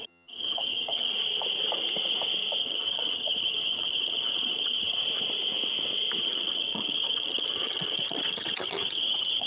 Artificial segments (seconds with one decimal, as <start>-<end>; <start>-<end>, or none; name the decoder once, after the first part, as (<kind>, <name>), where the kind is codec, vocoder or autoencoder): 0.0-1.1 (vocoder, HiFi-GAN); 2.6-5.0; 6.2-9.5